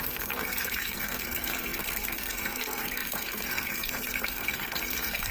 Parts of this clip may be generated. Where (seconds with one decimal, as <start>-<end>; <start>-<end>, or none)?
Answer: 0.0-5.3

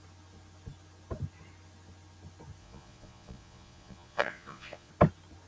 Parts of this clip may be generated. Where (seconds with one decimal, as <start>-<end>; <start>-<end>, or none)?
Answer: 2.6-4.9

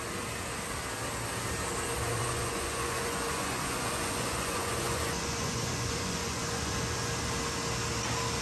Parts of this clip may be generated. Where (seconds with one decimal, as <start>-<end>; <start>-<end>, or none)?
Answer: 2.2-7.1

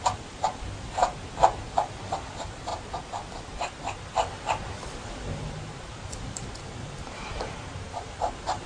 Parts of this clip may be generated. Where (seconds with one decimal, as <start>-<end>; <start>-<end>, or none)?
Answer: 0.0-1.0; 1.9-2.7; 4.9-8.7

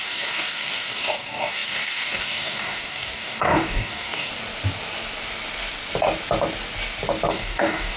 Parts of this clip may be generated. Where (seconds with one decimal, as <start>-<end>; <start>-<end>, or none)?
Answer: 0.0-4.3; 7.3-8.0